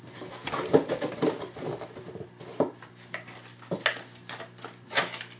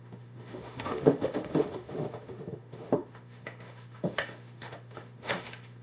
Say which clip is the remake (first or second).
second